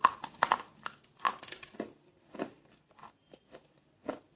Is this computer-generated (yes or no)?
no